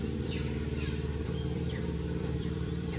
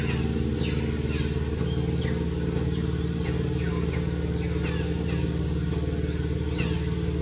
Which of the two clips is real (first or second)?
second